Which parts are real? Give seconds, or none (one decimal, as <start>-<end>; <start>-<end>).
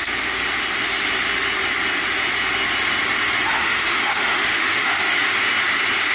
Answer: 0.0-3.5; 5.1-6.1